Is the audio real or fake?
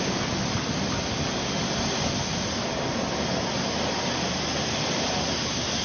real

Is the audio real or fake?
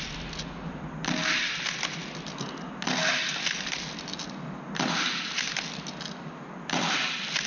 real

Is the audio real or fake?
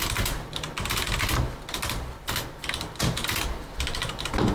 real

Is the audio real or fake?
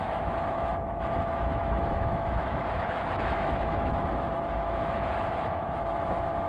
fake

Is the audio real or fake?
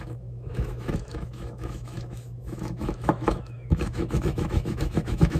fake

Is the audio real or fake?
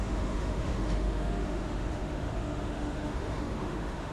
fake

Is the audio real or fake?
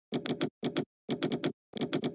real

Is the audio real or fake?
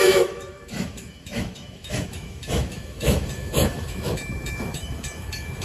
fake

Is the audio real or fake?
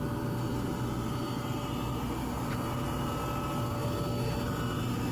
real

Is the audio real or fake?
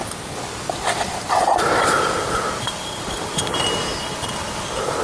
real